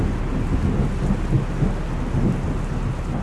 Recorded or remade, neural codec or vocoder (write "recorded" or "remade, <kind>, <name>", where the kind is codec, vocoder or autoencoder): recorded